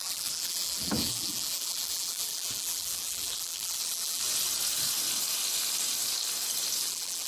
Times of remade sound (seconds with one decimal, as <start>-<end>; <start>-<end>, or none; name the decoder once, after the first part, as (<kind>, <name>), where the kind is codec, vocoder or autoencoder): 0.0-4.2 (vocoder, BigVGAN v2); 6.8-7.3